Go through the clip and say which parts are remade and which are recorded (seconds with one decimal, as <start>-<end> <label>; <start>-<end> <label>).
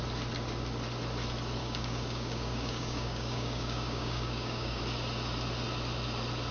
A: 0.0-1.6 recorded; 1.6-4.8 remade; 4.8-6.5 recorded